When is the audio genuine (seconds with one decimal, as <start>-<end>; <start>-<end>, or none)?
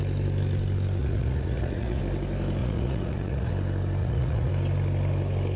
0.0-1.0; 2.0-2.6; 3.5-4.0; 4.5-5.6